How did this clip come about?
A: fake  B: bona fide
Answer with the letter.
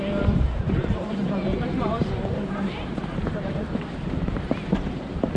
A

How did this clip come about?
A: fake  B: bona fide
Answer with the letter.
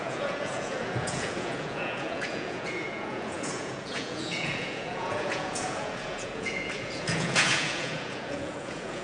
A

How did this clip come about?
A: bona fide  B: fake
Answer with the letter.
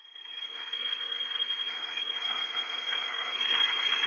B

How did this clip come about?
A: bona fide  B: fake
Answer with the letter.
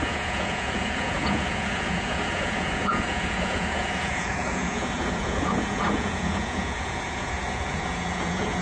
B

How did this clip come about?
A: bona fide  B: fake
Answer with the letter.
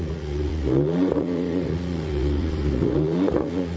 B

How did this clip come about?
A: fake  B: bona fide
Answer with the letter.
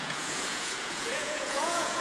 A